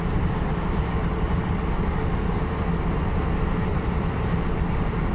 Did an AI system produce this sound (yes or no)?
no